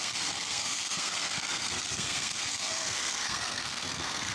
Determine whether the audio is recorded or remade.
remade